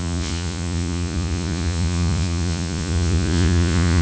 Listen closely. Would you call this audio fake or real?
fake